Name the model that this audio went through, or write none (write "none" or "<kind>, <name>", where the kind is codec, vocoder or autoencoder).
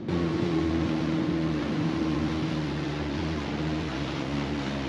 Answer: vocoder, Vocos